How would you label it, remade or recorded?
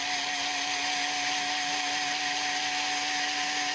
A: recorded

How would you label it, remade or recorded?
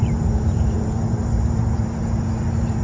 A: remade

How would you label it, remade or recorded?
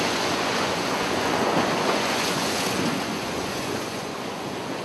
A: remade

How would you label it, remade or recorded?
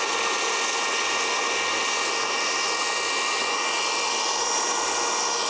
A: recorded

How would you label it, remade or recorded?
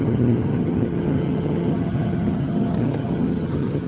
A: remade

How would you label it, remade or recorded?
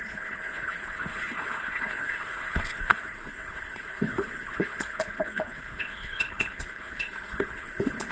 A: remade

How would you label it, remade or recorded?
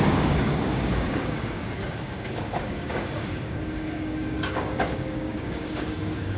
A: remade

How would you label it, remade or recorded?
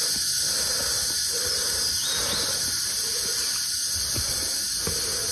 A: recorded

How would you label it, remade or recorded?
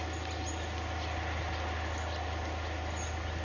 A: recorded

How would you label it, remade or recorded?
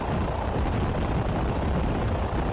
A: recorded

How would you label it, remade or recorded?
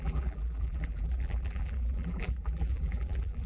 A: remade